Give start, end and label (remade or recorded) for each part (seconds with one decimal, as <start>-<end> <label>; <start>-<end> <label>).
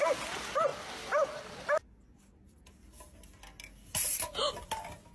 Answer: 0.0-5.1 recorded